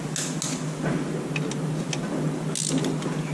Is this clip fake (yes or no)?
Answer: no